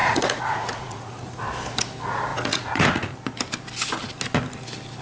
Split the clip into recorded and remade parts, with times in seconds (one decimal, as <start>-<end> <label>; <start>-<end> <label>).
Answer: 0.0-1.4 remade; 1.4-2.3 recorded; 2.3-3.1 remade; 3.1-5.0 recorded